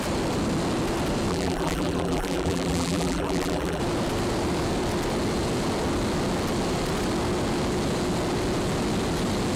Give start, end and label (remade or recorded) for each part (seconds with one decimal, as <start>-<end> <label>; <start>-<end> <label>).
0.0-1.3 recorded; 1.3-3.8 remade; 3.8-9.6 recorded